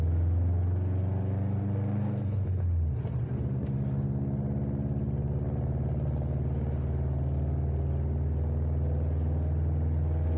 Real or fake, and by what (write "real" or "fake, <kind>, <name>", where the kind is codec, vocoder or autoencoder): real